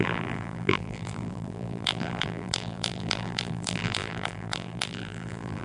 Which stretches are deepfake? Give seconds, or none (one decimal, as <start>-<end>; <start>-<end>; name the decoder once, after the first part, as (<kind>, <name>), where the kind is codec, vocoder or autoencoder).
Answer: 0.0-5.6 (vocoder, BigVGAN v2)